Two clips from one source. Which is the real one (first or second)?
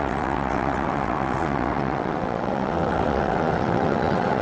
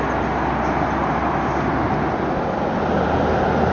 second